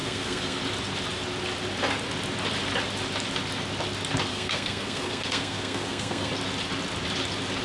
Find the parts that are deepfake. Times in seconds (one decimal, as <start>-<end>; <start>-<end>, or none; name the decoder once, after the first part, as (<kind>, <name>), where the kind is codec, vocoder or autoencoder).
0.0-0.6 (codec, SNAC); 4.3-6.3